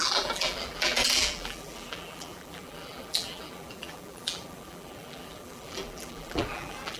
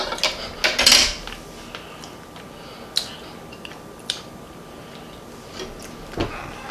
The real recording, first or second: second